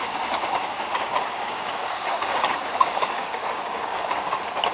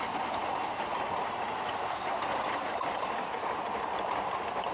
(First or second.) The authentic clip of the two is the second